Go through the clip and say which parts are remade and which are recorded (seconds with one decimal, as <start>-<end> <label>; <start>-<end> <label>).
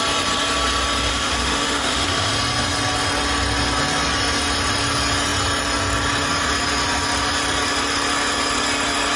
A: 0.0-1.1 recorded; 1.1-2.3 remade; 2.3-9.2 recorded